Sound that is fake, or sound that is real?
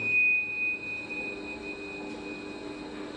real